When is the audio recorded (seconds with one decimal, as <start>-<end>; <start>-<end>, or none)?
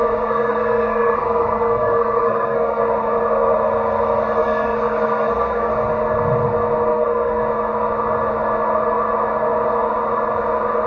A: 2.8-4.4; 5.7-6.9; 7.4-10.9